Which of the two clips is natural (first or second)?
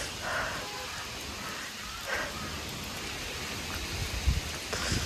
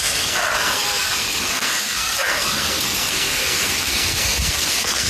first